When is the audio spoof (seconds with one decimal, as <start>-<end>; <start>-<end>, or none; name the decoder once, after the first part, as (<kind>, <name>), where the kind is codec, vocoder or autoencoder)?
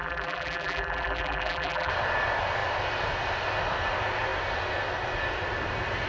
0.0-1.9 (vocoder, BigVGAN v2)